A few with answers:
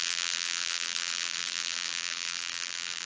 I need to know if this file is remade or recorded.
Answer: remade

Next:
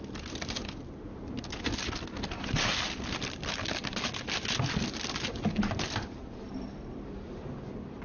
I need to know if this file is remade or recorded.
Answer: recorded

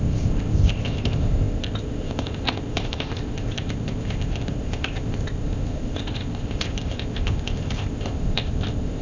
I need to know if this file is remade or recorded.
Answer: remade